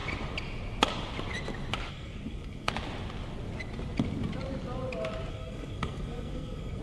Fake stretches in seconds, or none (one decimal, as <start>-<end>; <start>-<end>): 1.9-2.7; 5.3-6.8

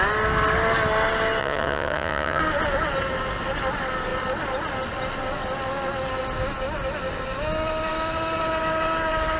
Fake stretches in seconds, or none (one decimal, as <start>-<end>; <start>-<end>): 1.4-2.4